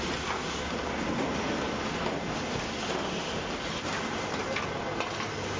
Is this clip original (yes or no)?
yes